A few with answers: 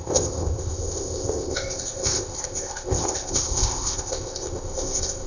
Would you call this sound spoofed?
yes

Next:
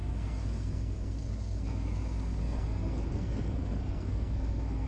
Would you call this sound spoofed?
yes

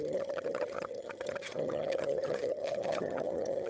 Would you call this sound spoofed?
yes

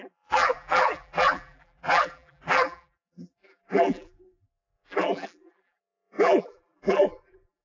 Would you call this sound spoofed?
yes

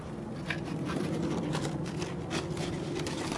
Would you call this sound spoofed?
no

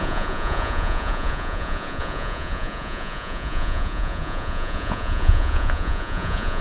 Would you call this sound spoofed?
yes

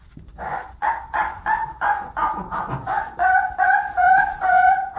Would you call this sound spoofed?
yes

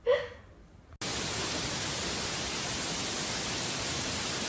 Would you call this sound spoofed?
no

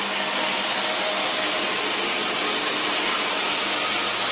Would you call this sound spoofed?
no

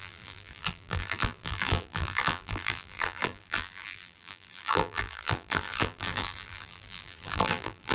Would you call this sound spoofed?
yes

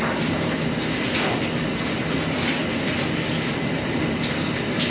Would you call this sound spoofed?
no